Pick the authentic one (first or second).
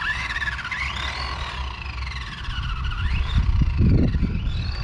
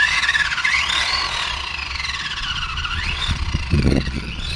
first